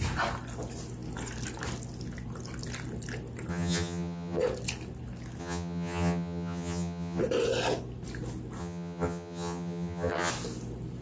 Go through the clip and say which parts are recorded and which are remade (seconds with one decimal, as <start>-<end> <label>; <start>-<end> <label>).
0.0-3.5 recorded; 3.5-4.4 remade; 4.4-5.4 recorded; 5.4-7.2 remade; 7.2-8.6 recorded; 8.6-10.3 remade; 10.3-11.0 recorded